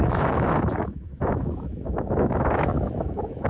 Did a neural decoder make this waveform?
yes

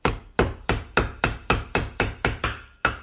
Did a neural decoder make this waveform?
yes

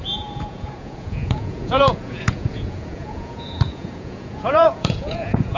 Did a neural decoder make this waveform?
yes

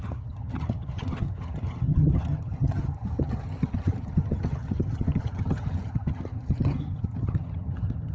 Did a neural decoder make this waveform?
yes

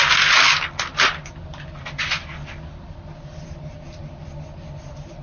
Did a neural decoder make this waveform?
no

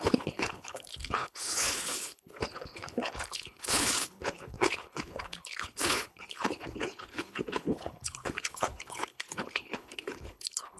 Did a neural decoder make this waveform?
yes